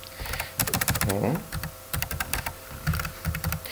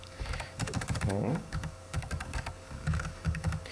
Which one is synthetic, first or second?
second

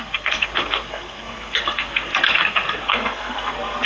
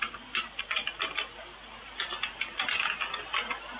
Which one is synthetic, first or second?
first